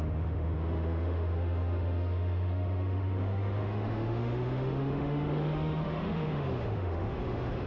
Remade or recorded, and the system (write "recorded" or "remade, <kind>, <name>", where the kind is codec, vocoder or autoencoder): remade, autoencoder, DAC-VAE